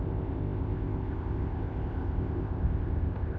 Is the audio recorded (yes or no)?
no